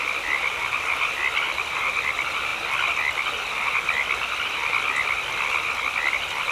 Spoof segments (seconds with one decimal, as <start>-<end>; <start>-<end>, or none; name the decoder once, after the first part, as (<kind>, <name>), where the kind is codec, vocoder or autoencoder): none